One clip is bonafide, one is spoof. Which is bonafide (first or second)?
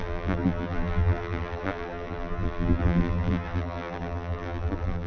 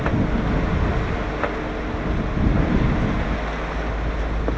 second